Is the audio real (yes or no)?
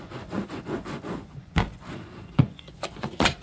no